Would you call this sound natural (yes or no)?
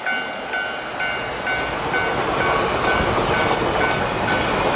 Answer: yes